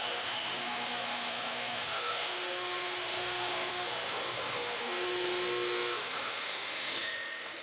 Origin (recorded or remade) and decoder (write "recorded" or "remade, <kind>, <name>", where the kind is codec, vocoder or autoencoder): remade, autoencoder, DAC-VAE